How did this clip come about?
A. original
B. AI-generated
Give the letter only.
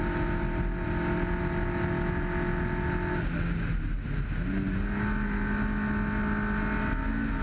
A